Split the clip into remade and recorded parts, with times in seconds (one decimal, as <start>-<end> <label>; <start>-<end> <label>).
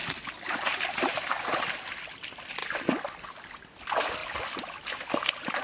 0.0-2.6 recorded; 2.6-3.6 remade; 3.6-4.2 recorded; 4.2-4.7 remade; 4.7-5.6 recorded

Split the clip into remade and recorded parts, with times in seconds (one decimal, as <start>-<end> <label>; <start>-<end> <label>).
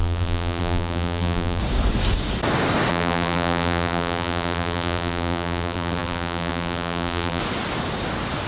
0.0-1.6 remade; 1.6-2.9 recorded; 2.9-7.4 remade; 7.4-8.5 recorded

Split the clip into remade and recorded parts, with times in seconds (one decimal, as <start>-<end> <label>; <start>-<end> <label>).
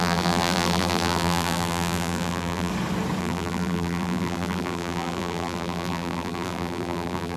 0.0-2.7 remade; 2.7-3.2 recorded; 3.2-7.4 remade